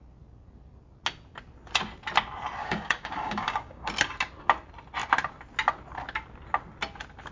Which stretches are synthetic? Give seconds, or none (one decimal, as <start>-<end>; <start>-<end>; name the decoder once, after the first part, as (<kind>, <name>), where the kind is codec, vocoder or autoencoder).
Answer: 2.6-3.9 (codec, DAC)